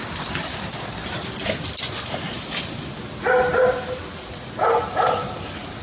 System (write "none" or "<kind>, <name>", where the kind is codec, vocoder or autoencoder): none